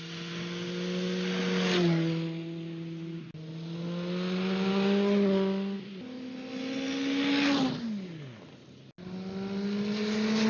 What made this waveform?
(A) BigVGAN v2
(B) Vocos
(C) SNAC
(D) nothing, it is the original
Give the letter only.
D